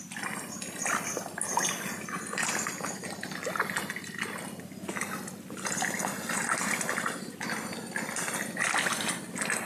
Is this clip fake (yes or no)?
no